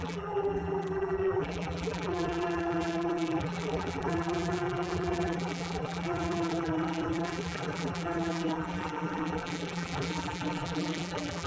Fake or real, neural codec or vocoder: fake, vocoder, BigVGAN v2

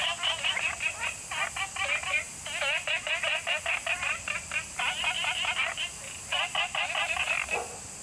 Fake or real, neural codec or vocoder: real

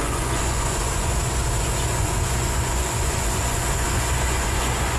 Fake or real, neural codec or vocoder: fake, vocoder, Vocos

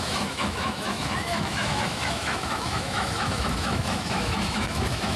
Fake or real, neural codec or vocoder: fake, autoencoder, DAC-VAE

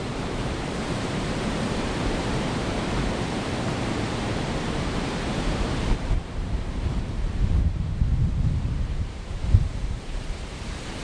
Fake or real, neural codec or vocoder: fake, vocoder, BigVGAN v2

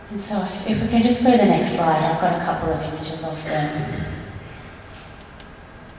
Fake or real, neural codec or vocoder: real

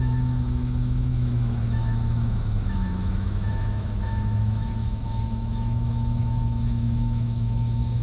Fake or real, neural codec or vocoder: fake, autoencoder, DAC-VAE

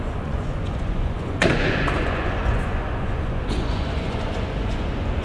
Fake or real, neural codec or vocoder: fake, vocoder, Vocos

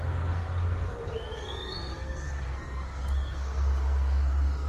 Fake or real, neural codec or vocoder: fake, codec, SNAC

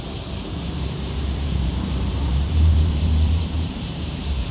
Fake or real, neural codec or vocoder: fake, vocoder, BigVGAN v2